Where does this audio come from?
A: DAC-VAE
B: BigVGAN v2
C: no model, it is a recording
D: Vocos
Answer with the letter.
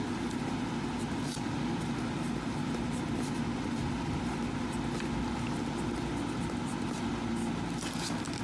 C